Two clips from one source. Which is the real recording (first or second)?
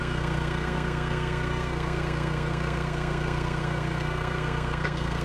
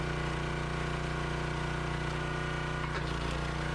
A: second